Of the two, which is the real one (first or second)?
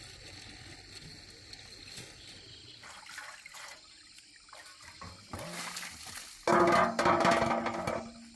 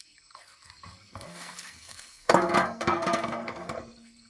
first